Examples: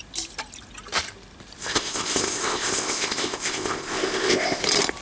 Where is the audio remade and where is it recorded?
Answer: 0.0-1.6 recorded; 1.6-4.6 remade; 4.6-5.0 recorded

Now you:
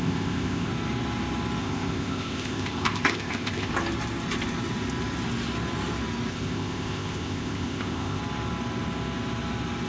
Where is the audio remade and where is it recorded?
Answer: 0.0-0.7 remade; 0.7-1.6 recorded; 1.6-3.7 remade; 3.7-6.3 recorded; 6.3-8.2 remade; 8.2-9.9 recorded

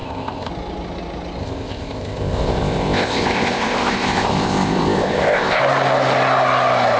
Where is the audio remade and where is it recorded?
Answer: 0.0-0.5 remade; 0.5-1.4 recorded; 1.4-5.6 remade; 5.6-7.0 recorded

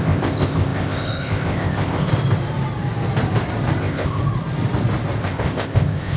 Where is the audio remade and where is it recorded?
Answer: 0.0-2.1 remade; 2.1-3.8 recorded; 3.8-4.2 remade; 4.2-5.2 recorded; 5.2-6.2 remade

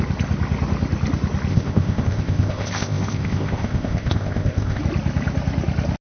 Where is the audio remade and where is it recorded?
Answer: 0.0-1.5 recorded; 1.5-4.8 remade; 4.8-6.0 recorded

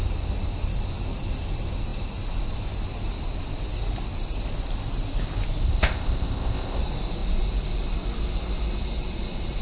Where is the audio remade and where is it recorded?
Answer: 0.0-5.6 recorded; 5.6-6.8 remade; 6.8-9.6 recorded

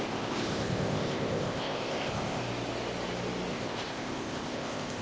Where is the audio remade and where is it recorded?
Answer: 0.0-2.4 remade; 2.4-3.5 recorded; 3.5-5.0 remade

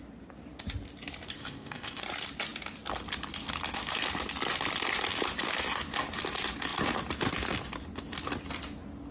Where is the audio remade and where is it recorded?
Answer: 0.0-1.4 recorded; 1.4-2.0 remade; 2.0-9.1 recorded